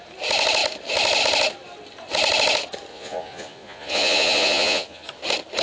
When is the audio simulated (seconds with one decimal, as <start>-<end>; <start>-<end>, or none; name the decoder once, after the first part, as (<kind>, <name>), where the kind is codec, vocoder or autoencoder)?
2.9-5.1 (vocoder, Vocos)